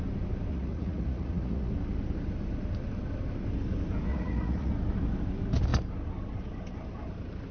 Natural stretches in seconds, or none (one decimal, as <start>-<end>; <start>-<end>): 0.0-0.5; 1.7-4.1; 4.7-7.5

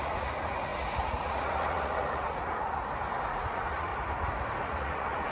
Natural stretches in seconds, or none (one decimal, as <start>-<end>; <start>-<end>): 2.8-3.3; 3.9-4.6

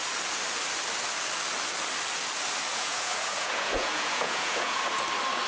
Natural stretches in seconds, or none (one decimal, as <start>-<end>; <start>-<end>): 0.0-2.7; 5.0-5.5

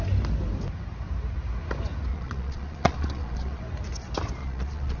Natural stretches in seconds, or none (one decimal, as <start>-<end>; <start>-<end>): 0.0-2.1; 3.6-4.4

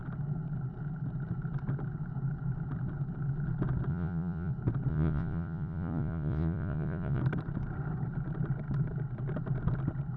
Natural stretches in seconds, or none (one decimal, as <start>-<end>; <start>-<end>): 0.0-3.9; 4.5-4.9; 7.2-10.2

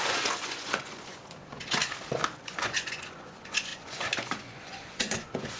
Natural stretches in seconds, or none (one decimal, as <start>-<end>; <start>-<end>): 1.8-2.4

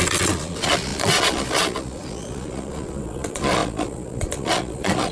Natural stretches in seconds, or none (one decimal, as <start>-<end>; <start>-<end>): none

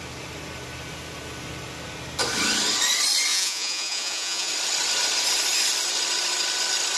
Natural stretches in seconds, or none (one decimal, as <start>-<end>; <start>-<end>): 0.0-3.3; 4.5-7.0